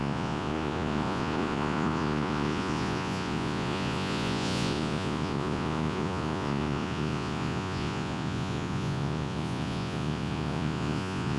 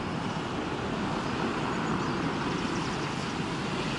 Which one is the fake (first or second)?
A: first